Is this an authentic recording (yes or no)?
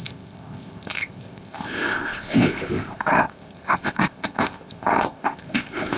no